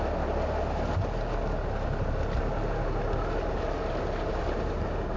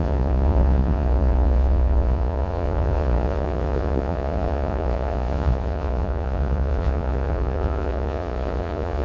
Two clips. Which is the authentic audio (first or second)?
first